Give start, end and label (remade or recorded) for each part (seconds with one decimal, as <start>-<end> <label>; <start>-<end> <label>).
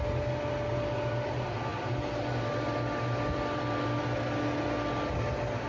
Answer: 0.0-5.7 recorded